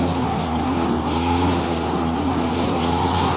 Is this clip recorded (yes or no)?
no